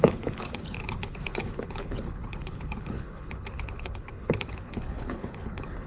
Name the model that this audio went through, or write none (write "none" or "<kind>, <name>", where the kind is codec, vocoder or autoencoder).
codec, HILCodec